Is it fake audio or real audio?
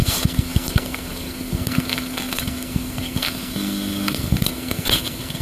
fake